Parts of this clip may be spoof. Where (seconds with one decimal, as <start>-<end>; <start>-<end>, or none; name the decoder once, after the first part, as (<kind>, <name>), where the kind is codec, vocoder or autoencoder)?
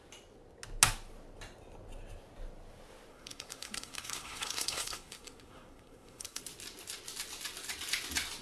3.1-6.4 (codec, SNAC)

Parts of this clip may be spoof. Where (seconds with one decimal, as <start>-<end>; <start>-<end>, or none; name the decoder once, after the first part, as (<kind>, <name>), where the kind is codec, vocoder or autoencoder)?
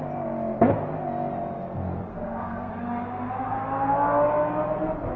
2.1-2.7 (codec, SNAC)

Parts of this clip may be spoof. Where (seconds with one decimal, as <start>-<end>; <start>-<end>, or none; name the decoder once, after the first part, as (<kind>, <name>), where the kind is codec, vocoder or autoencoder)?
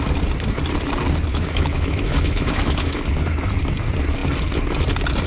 1.3-3.1 (autoencoder, DAC-VAE)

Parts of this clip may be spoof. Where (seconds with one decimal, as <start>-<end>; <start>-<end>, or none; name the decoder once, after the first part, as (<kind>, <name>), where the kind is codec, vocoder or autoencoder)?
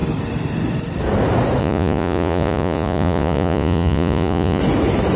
1.6-4.6 (vocoder, Vocos)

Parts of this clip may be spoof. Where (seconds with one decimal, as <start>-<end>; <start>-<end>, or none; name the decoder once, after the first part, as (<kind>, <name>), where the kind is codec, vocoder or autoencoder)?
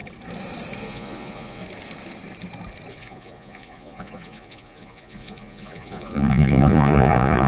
0.8-1.6 (vocoder, Vocos); 2.9-7.5